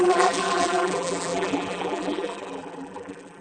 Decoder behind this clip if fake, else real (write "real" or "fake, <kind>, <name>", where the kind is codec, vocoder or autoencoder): fake, vocoder, BigVGAN v2